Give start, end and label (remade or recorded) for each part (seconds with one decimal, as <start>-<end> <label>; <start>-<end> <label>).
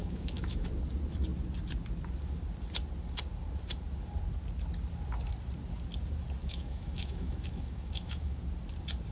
0.0-0.7 remade; 0.7-6.4 recorded; 6.4-8.4 remade; 8.4-9.1 recorded